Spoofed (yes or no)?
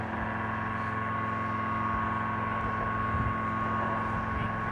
no